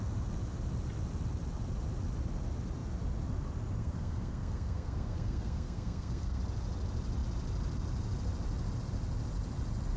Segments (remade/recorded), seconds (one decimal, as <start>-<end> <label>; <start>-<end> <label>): 0.0-3.8 recorded; 3.8-6.4 remade; 6.4-10.0 recorded